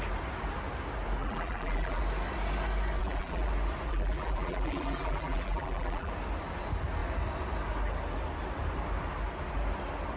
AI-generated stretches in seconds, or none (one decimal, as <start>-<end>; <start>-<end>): 1.2-2.0; 3.0-3.5; 3.9-6.1